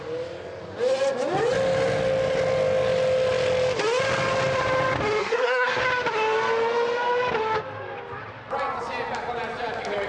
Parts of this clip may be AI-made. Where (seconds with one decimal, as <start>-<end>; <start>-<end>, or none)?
5.2-5.8